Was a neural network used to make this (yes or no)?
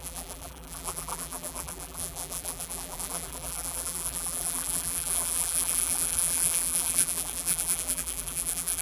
yes